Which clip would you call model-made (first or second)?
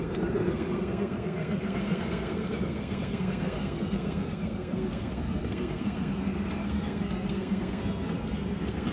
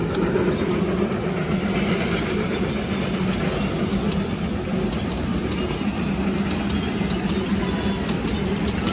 first